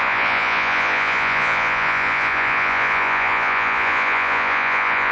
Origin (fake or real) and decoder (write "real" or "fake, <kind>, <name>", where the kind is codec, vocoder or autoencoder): fake, vocoder, Vocos